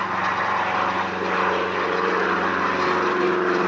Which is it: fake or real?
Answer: fake